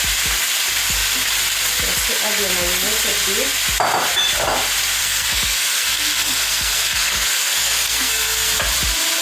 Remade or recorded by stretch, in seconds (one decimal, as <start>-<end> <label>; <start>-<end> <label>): 0.0-5.0 recorded; 5.0-8.6 remade; 8.6-9.2 recorded